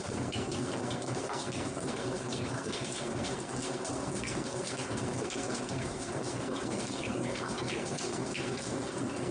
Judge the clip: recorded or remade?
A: remade